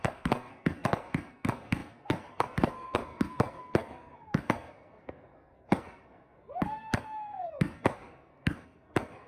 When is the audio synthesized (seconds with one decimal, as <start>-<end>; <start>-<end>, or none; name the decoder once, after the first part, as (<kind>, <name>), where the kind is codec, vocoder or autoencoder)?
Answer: 0.0-9.3 (codec, SNAC)